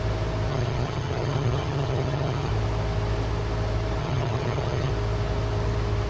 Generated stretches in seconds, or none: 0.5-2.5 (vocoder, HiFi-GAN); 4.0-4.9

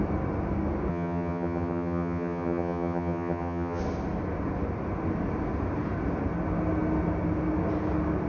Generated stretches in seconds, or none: 0.9-3.8 (vocoder, HiFi-GAN)

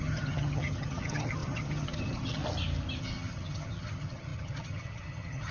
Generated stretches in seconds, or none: 0.0-2.4 (vocoder, HiFi-GAN); 3.0-5.5

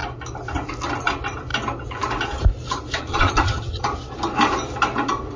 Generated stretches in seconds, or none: 3.1-3.8 (vocoder, HiFi-GAN)

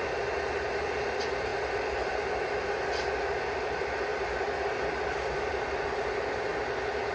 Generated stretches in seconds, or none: none

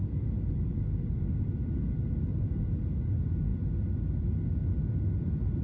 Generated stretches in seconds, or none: none